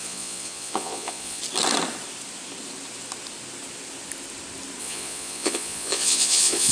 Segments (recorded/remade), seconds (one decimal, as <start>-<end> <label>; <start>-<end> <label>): 0.0-1.4 remade; 1.4-4.8 recorded; 4.8-6.7 remade